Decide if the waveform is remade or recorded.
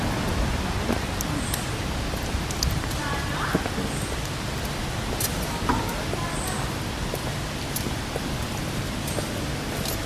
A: recorded